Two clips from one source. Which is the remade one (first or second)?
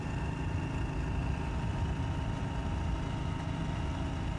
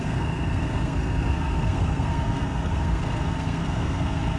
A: second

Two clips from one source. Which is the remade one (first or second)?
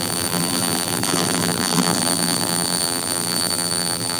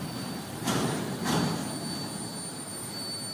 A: first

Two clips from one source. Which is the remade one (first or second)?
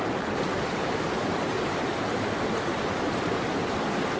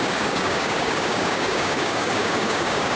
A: second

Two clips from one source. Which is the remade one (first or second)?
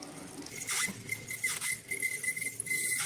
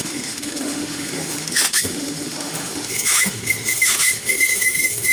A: second